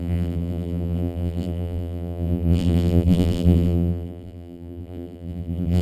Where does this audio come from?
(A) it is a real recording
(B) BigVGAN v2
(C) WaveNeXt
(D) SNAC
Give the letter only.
B